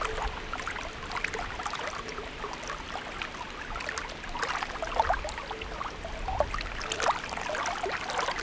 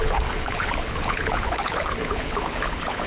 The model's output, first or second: second